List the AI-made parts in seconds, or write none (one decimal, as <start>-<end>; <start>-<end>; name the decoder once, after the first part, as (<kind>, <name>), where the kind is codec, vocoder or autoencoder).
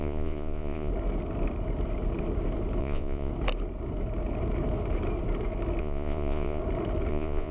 0.0-0.9 (vocoder, Vocos); 2.8-3.3; 5.8-6.6; 7.1-7.5